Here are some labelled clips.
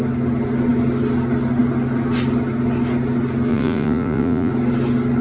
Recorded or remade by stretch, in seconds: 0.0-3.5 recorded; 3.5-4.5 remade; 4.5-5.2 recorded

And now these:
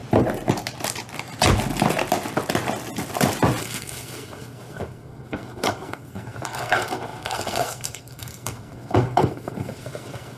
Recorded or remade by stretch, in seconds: 0.0-3.6 recorded; 3.6-10.4 remade